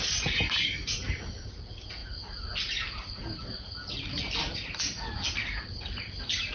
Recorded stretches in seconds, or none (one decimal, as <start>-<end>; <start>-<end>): 0.0-6.5